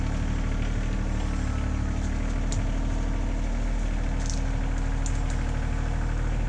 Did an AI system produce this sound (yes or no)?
no